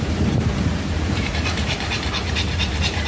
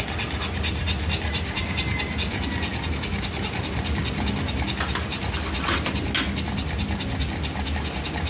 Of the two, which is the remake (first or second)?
first